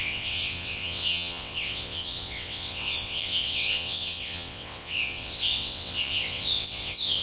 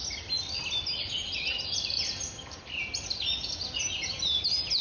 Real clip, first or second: second